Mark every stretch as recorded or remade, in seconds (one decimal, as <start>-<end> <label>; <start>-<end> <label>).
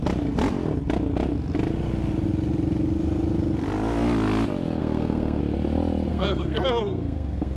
0.0-4.8 recorded; 4.8-5.4 remade; 5.4-6.1 recorded; 6.1-7.6 remade